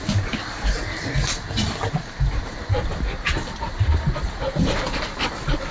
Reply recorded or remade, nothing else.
recorded